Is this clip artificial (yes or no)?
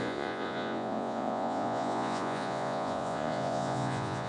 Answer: yes